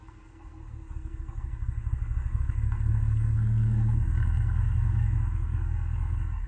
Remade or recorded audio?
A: remade